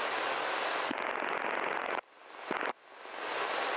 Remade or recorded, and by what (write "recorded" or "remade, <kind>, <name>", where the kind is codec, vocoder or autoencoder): recorded